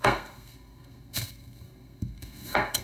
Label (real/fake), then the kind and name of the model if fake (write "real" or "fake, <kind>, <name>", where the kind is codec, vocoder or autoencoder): fake, codec, SNAC